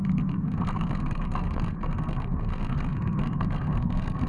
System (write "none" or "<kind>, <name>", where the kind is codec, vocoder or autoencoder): codec, SNAC